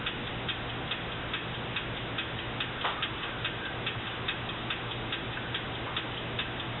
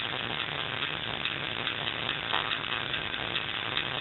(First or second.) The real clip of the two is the first